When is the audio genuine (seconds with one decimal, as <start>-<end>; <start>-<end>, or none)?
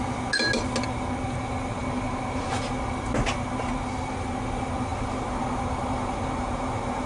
0.0-1.8; 2.5-4.9